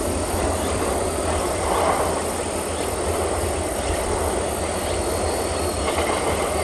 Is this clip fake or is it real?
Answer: real